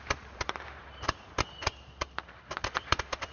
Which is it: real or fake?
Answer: fake